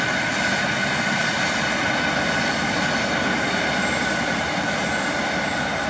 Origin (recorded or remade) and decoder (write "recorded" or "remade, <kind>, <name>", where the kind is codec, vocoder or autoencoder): recorded